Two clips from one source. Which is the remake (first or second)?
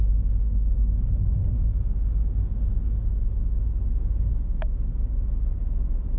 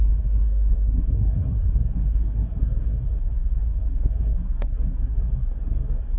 second